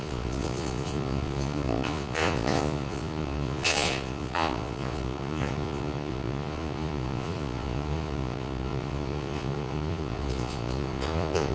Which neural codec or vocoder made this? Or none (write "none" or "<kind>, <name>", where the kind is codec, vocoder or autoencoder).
vocoder, Vocos